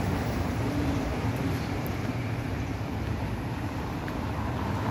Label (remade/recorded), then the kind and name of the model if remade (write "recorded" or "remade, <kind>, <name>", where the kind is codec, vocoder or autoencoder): remade, vocoder, BigVGAN v2